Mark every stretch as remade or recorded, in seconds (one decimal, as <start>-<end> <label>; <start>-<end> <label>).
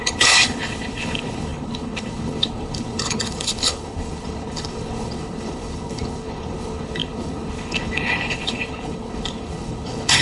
0.0-10.2 remade